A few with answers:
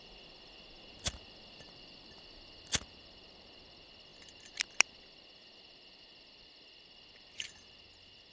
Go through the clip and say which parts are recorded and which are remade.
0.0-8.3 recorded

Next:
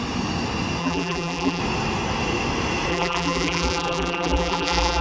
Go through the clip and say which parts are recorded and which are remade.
0.0-0.8 recorded; 0.8-1.6 remade; 1.6-2.9 recorded; 2.9-5.0 remade